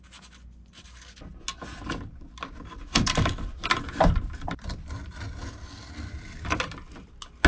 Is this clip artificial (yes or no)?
no